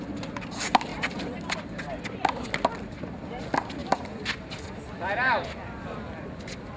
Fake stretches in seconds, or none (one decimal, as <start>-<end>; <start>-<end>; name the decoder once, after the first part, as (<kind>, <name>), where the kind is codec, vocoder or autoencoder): none